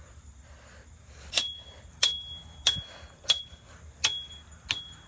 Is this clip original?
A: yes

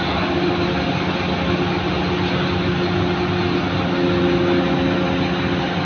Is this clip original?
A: yes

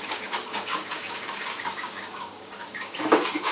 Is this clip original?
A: no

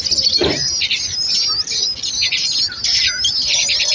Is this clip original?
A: yes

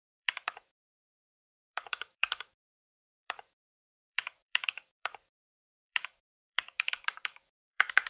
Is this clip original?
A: no